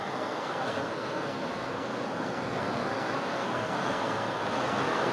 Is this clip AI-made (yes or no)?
yes